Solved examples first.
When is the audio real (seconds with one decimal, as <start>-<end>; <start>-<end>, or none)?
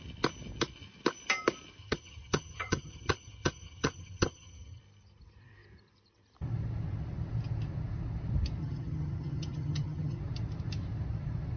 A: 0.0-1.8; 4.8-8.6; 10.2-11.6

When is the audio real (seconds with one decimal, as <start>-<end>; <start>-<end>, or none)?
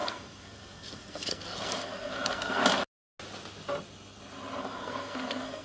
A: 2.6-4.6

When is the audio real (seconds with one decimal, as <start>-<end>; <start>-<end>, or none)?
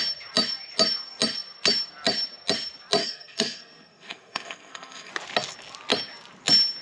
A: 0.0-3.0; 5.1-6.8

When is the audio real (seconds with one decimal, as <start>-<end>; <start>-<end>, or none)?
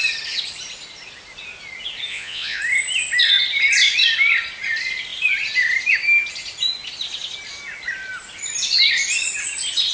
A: 0.0-2.1; 2.6-9.9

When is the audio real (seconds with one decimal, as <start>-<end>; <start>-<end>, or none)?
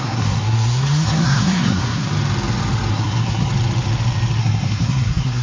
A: 2.1-2.9; 3.5-4.4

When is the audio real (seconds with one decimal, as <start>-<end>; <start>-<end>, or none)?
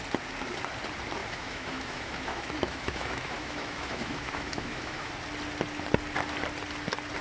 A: 0.0-1.2; 5.1-7.2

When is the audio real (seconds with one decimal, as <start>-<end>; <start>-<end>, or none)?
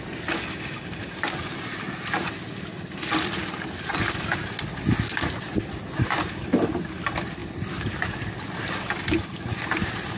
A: 0.0-10.2